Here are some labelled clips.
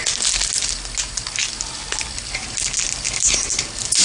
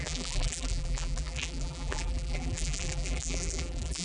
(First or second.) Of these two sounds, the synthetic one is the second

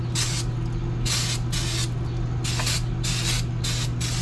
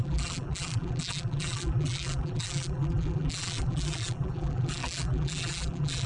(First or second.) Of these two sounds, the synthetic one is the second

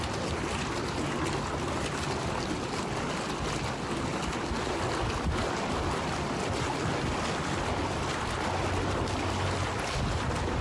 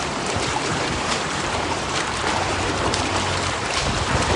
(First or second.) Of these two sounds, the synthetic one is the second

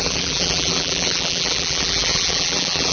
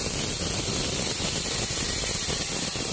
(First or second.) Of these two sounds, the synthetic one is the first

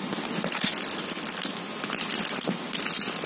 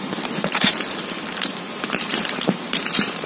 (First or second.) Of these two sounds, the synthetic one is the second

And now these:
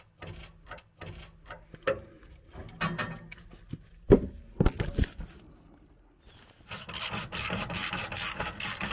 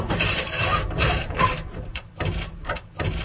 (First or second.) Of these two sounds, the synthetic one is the second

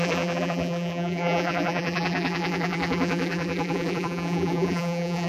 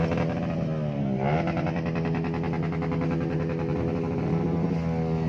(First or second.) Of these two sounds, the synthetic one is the first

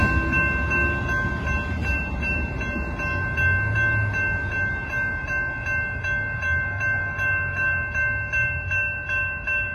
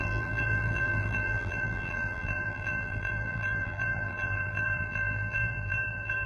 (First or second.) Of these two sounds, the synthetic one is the second